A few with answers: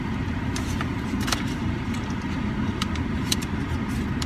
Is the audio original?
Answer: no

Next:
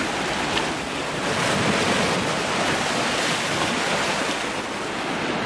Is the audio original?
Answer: yes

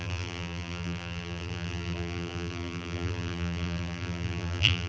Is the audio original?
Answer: no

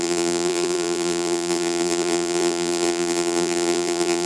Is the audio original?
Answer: no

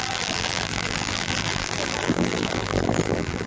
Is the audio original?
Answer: no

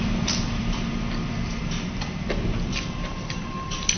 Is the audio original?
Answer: no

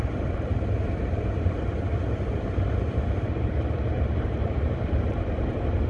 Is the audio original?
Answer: no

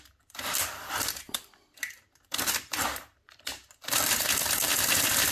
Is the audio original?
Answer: no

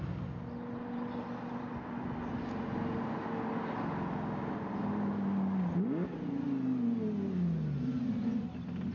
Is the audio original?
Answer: yes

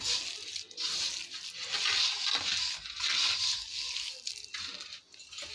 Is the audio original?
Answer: yes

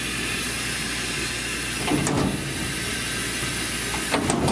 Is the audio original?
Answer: yes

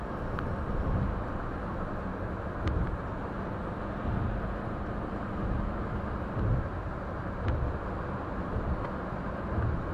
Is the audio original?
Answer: yes